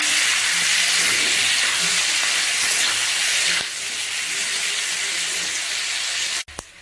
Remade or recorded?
recorded